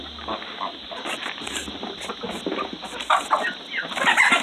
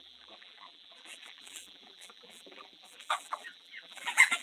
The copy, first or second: second